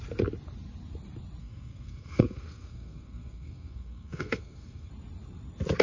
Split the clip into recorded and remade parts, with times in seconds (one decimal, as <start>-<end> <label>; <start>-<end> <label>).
0.0-1.4 recorded; 1.4-4.9 remade; 4.9-5.8 recorded